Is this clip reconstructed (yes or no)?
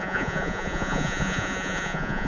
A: yes